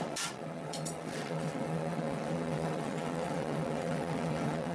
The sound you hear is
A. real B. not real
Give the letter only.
B